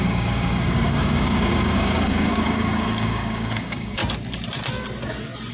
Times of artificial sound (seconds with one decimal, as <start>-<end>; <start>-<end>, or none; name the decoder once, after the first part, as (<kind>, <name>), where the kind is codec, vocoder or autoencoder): 0.0-4.0 (codec, DAC)